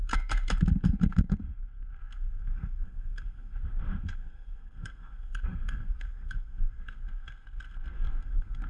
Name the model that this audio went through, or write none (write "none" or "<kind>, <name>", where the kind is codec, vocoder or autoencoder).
codec, SNAC